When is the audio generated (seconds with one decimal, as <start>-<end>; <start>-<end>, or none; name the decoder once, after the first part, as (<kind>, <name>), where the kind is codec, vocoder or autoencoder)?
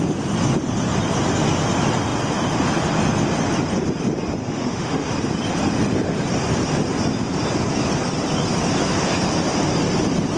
4.4-5.1 (autoencoder, DAC-VAE)